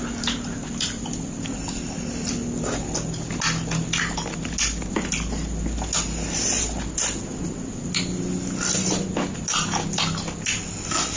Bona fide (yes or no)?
yes